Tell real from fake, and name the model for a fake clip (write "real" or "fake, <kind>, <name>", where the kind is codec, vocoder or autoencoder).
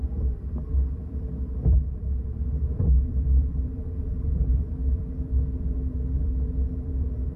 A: fake, vocoder, BigVGAN v2